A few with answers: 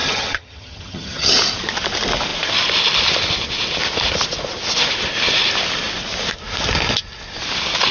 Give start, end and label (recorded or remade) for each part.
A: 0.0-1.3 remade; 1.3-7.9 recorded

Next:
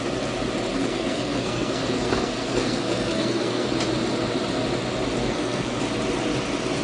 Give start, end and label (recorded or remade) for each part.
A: 0.0-0.7 recorded; 0.7-3.7 remade; 3.7-5.2 recorded; 5.2-5.8 remade; 5.8-6.8 recorded

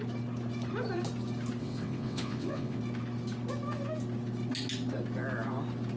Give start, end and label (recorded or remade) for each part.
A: 0.0-1.6 recorded; 1.6-2.8 remade; 2.8-6.0 recorded

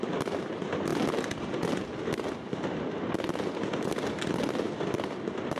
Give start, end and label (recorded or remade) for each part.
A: 0.0-0.9 remade; 0.9-3.6 recorded; 3.6-5.6 remade

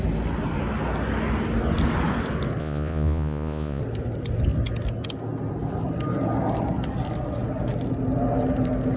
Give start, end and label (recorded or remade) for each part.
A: 0.0-2.6 recorded; 2.6-3.8 remade; 3.8-9.0 recorded

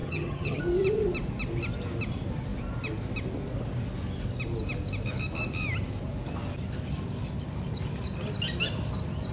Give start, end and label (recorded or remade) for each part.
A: 0.0-0.6 remade; 0.6-9.3 recorded

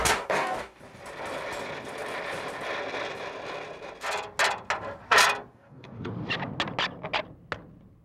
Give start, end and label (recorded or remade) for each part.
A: 0.0-0.8 remade; 0.8-5.5 recorded; 5.5-6.1 remade; 6.1-8.0 recorded

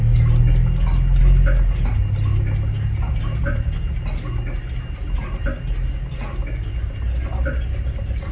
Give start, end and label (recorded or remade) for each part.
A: 0.0-8.3 recorded